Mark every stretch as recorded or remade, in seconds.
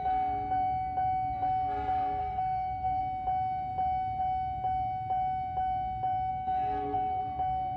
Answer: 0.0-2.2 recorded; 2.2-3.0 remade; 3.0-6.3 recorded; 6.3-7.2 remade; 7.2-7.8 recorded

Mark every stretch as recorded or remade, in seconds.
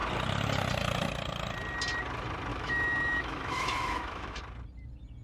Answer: 0.0-2.5 recorded; 2.5-4.4 remade; 4.4-5.2 recorded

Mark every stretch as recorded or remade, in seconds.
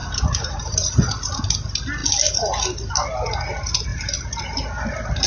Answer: 0.0-1.0 remade; 1.0-3.9 recorded; 3.9-4.4 remade; 4.4-5.3 recorded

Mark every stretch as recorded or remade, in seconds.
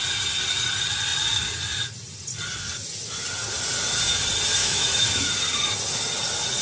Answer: 0.0-4.6 recorded; 4.6-5.3 remade; 5.3-6.6 recorded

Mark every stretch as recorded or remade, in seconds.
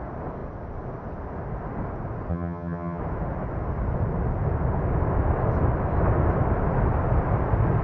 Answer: 0.0-2.3 recorded; 2.3-3.0 remade; 3.0-7.8 recorded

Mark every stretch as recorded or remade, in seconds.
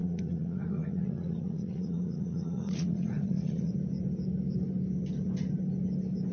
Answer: 0.0-3.7 remade; 3.7-6.3 recorded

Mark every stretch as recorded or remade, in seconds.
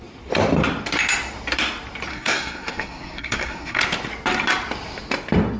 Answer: 0.0-2.1 recorded; 2.1-3.8 remade; 3.8-5.6 recorded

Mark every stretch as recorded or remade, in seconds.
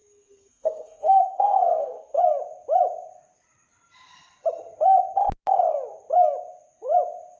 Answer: 0.0-2.2 remade; 2.2-7.4 recorded